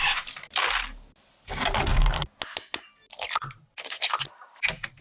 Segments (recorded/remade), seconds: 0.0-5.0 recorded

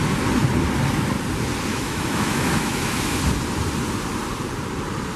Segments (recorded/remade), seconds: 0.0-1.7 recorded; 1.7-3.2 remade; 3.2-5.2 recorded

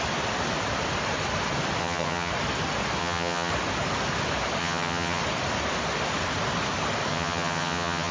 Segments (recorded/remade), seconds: 0.0-1.8 recorded; 1.8-2.3 remade; 2.3-3.0 recorded; 3.0-3.5 remade; 3.5-4.6 recorded; 4.6-5.2 remade; 5.2-7.1 recorded; 7.1-8.1 remade